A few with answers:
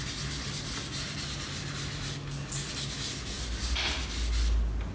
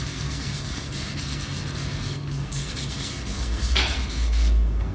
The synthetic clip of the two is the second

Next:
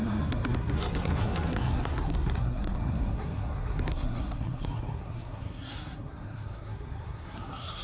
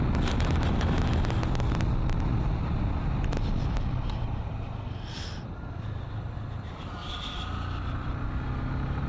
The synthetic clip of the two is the first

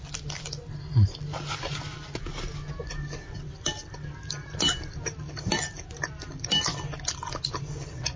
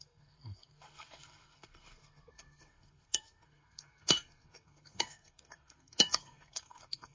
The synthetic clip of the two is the second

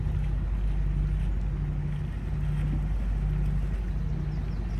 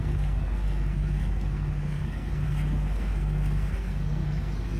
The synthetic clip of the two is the second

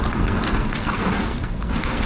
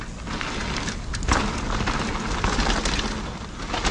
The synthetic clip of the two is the first